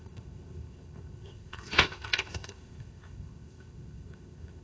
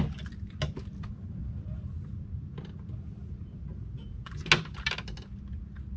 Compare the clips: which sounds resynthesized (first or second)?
first